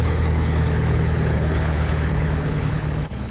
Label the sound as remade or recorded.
remade